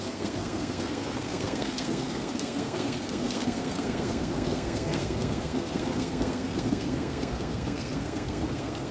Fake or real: fake